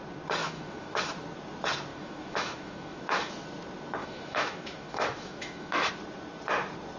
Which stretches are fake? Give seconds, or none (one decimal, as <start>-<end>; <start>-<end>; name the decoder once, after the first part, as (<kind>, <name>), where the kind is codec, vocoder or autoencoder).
0.4-1.0 (autoencoder, DAC-VAE); 1.9-3.3; 4.0-5.9